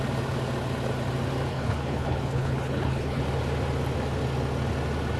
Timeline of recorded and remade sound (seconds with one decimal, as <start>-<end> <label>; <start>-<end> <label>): 0.0-1.5 recorded; 1.5-3.2 remade; 3.2-5.2 recorded